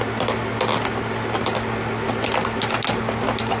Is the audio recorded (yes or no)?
yes